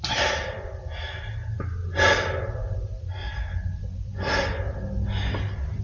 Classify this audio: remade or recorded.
recorded